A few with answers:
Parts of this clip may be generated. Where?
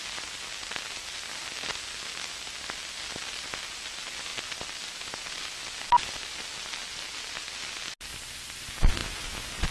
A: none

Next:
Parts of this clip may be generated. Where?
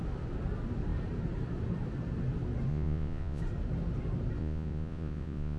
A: 2.7-3.4 (vocoder, Vocos); 4.4-5.6